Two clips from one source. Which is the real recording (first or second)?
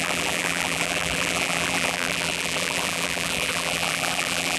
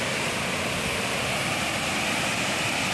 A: second